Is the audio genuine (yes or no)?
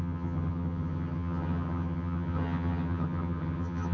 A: no